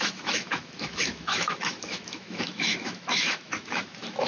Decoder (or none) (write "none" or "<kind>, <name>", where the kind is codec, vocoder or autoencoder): autoencoder, DAC-VAE